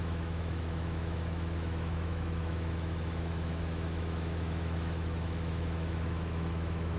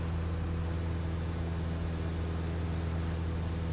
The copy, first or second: first